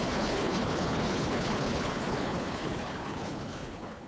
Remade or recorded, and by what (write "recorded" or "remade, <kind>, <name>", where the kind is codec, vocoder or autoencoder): remade, codec, HILCodec